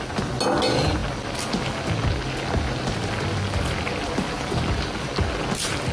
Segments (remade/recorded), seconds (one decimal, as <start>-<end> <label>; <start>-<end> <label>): 0.0-5.9 recorded